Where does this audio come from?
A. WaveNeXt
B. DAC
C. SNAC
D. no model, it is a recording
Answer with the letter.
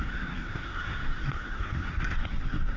C